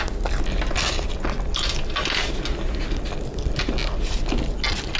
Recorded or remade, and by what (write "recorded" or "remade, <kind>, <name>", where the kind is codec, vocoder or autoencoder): recorded